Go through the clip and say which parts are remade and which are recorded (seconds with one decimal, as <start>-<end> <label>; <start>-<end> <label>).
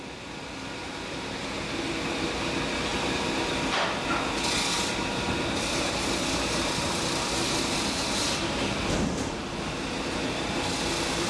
0.0-2.9 recorded; 2.9-3.6 remade; 3.6-11.3 recorded